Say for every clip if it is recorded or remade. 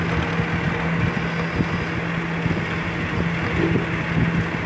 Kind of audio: recorded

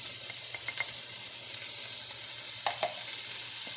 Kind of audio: recorded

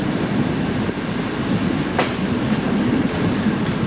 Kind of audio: recorded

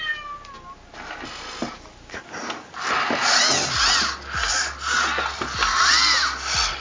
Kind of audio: recorded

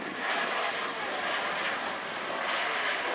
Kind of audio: recorded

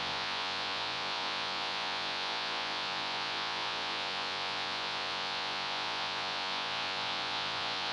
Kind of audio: remade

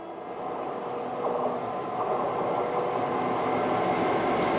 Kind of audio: recorded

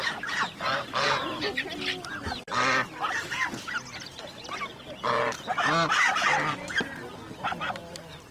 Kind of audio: recorded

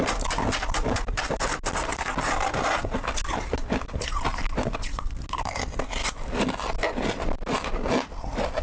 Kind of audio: recorded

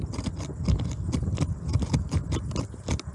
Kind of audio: recorded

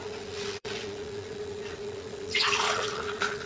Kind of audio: remade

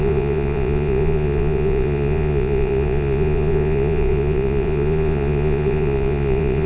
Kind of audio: remade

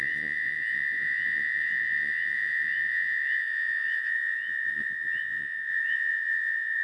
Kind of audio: remade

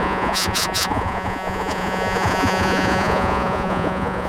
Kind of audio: remade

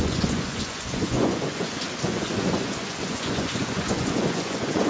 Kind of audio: remade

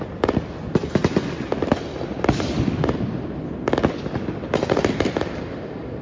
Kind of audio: recorded